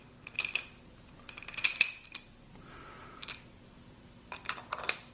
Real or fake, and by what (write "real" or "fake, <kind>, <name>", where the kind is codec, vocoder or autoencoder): fake, vocoder, BigVGAN v2